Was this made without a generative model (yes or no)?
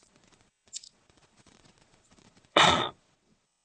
no